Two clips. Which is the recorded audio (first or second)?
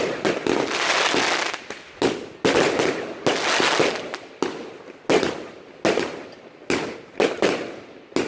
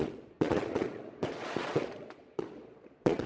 first